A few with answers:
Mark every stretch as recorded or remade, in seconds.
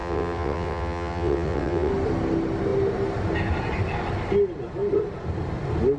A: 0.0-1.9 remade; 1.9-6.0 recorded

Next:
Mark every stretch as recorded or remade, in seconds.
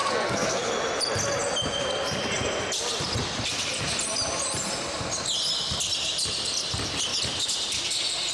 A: 0.0-0.7 remade; 0.7-8.3 recorded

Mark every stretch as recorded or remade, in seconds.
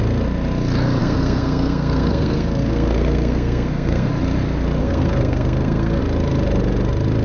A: 0.0-1.0 recorded; 1.0-4.1 remade; 4.1-4.8 recorded; 4.8-6.0 remade; 6.0-7.2 recorded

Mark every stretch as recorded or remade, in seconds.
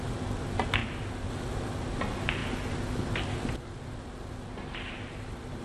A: 0.0-5.6 recorded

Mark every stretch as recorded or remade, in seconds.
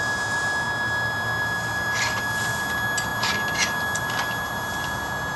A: 0.0-5.4 recorded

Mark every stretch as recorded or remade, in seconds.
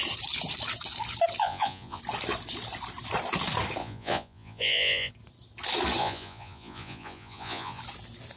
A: 0.0-1.4 recorded; 1.4-2.0 remade; 2.0-3.8 recorded; 3.8-5.1 remade; 5.1-6.0 recorded; 6.0-7.8 remade; 7.8-8.4 recorded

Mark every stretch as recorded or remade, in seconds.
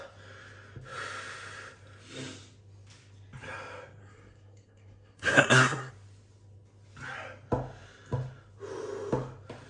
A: 0.0-4.0 recorded; 4.0-5.9 remade; 5.9-9.7 recorded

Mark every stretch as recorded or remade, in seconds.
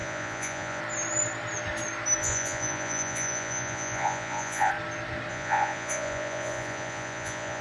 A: 0.0-0.8 remade; 0.8-2.2 recorded; 2.2-4.7 remade; 4.7-5.3 recorded; 5.3-7.6 remade